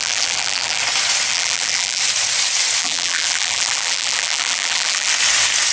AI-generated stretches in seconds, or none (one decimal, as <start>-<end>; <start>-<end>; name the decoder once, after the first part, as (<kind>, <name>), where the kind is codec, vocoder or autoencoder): 0.0-0.8 (vocoder, BigVGAN v2); 1.3-2.0; 2.8-5.1